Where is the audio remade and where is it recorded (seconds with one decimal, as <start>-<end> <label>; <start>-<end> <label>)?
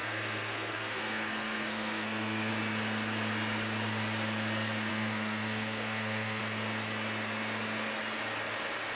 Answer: 0.0-2.5 remade; 2.5-4.9 recorded; 4.9-6.4 remade; 6.4-8.9 recorded